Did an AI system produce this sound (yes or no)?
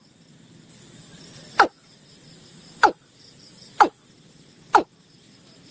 no